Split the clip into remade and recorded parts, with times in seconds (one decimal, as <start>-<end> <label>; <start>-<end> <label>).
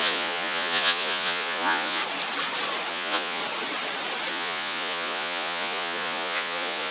0.0-2.0 remade; 2.0-2.9 recorded; 2.9-3.4 remade; 3.4-4.3 recorded; 4.3-6.9 remade